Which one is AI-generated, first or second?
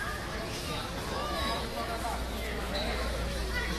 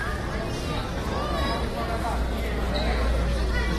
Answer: first